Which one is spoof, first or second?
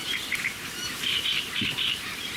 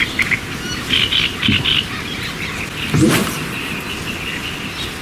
first